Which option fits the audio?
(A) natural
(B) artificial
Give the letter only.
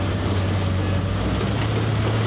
A